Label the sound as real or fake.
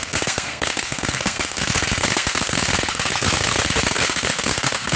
fake